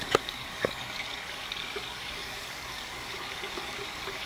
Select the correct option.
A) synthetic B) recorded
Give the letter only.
A